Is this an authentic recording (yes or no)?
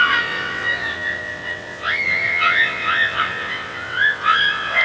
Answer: no